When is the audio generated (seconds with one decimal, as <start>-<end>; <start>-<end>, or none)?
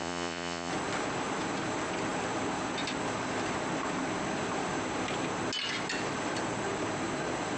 0.0-0.7